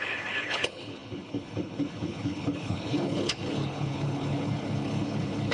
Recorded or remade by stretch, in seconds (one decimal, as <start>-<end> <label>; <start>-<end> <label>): 0.0-5.5 remade